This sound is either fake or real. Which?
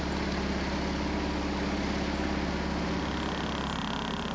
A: real